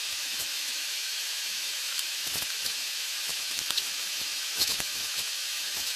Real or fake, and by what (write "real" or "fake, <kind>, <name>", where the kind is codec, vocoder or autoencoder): fake, autoencoder, DAC-VAE